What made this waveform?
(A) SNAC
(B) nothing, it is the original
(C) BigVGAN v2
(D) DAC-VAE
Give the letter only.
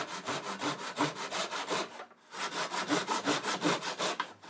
B